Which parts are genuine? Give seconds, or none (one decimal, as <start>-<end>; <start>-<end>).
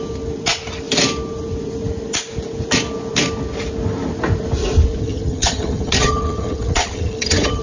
0.0-5.0